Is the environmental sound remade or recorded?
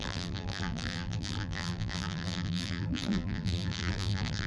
remade